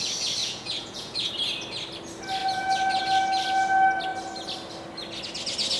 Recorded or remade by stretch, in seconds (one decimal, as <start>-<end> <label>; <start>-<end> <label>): 0.0-0.4 recorded; 0.4-1.3 remade; 1.3-5.8 recorded